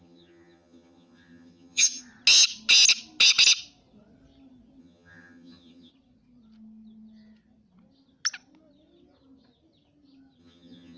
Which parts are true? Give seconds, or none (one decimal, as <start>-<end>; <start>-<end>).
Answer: 2.0-4.8; 5.9-10.4

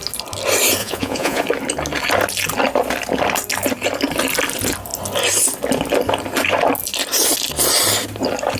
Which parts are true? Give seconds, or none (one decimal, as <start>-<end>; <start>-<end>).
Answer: 0.0-0.8; 1.4-8.6

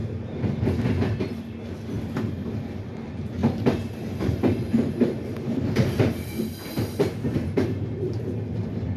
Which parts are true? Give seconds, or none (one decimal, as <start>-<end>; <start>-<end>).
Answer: 0.0-3.4; 8.2-9.0

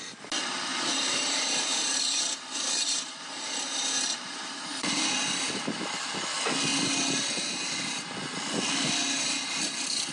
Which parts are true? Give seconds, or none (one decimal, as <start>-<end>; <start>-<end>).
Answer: 0.0-0.7; 5.5-10.1

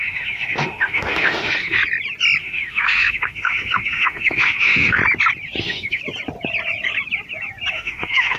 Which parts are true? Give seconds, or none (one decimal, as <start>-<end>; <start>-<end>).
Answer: 1.8-2.4; 5.0-5.6; 6.0-7.7

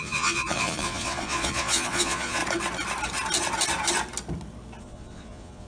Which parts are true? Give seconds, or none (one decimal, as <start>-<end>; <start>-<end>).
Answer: 2.4-4.8

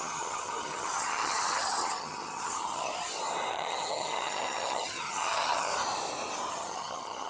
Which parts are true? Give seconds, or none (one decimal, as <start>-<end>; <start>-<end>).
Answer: 2.9-3.5; 5.7-6.5

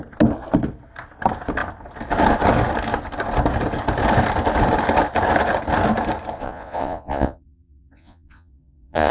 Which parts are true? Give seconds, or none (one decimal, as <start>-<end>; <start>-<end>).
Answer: 0.0-6.4